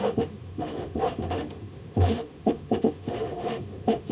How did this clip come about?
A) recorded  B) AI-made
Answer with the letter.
B